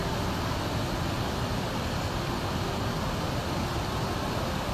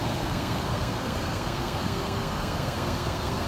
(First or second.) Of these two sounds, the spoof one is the second